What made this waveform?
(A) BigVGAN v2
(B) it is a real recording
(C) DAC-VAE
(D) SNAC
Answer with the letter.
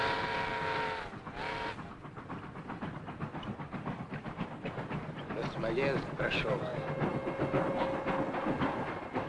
B